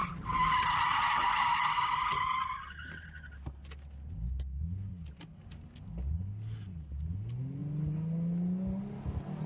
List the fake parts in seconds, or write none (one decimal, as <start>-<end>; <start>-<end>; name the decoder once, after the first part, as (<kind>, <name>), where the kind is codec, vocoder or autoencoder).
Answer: none